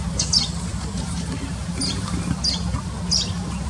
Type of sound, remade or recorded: recorded